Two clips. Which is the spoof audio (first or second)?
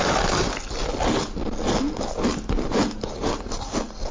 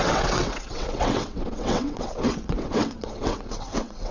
second